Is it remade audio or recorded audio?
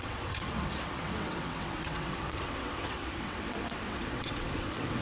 remade